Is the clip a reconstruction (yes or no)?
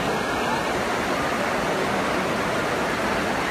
no